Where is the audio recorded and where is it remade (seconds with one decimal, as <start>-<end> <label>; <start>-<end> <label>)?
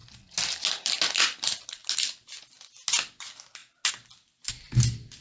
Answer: 0.0-5.2 recorded